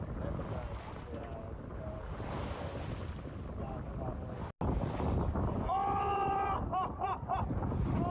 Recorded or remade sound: recorded